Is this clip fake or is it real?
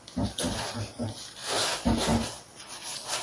real